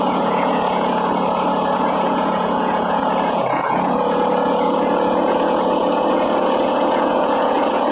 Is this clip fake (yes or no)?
yes